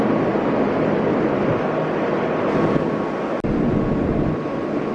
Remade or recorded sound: recorded